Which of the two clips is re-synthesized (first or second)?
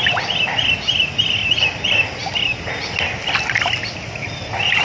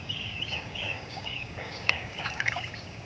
second